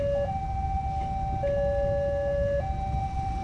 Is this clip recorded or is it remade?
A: recorded